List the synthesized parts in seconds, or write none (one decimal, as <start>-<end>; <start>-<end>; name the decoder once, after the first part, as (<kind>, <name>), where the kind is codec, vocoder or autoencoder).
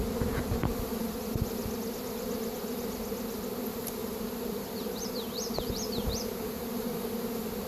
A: 4.0-7.0 (vocoder, BigVGAN v2)